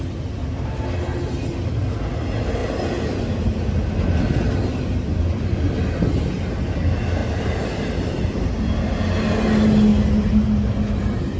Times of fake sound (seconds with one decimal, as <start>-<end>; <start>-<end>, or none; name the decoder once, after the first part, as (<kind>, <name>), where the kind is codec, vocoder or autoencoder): 7.2-8.4 (vocoder, BigVGAN v2)